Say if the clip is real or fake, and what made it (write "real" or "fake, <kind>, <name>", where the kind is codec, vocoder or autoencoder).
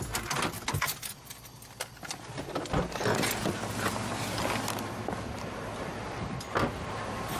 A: real